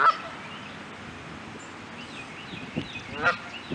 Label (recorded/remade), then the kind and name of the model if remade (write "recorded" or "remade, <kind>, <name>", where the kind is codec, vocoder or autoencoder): recorded